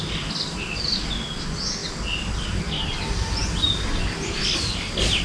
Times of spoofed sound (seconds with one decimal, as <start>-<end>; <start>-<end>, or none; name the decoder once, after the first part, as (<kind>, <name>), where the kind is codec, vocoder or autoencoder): none